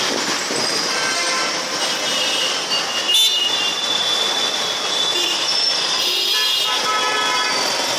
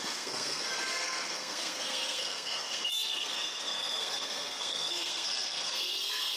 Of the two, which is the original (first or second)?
first